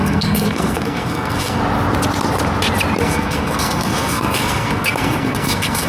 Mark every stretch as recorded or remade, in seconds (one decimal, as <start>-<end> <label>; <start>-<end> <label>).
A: 0.0-1.6 remade; 1.6-3.0 recorded; 3.0-5.9 remade